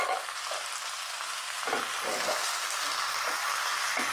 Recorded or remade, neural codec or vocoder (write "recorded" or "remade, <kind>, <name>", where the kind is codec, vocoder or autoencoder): recorded